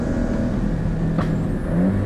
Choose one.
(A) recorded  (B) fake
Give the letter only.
A